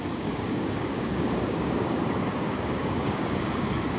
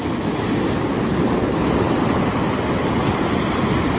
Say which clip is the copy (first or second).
first